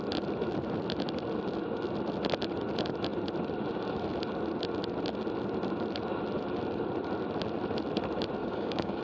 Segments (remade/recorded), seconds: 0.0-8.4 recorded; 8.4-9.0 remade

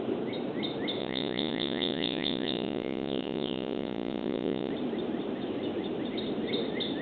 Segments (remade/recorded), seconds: 0.0-1.0 recorded; 1.0-4.7 remade; 4.7-7.0 recorded

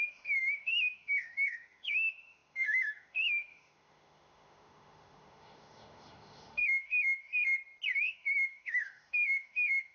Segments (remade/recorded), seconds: 0.0-7.3 remade; 7.3-8.0 recorded; 8.0-9.9 remade

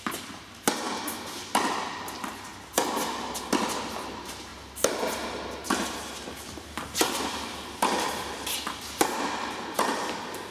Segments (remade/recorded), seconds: 0.0-10.5 recorded

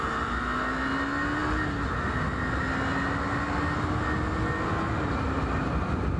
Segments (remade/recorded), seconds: 0.0-6.2 recorded

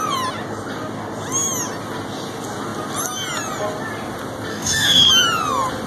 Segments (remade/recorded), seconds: 0.0-4.5 recorded; 4.5-5.1 remade; 5.1-5.9 recorded

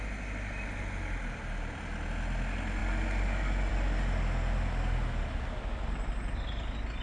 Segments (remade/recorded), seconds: 0.0-7.0 recorded

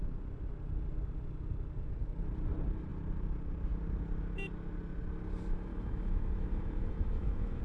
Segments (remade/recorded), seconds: 0.0-5.7 recorded; 5.7-7.6 remade